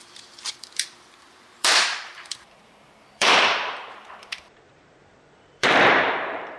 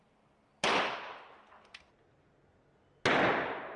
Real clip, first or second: second